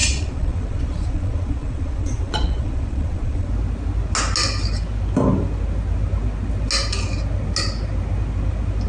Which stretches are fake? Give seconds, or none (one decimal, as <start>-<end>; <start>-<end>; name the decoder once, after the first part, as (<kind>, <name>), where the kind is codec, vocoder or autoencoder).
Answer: 0.0-3.5 (vocoder, Vocos)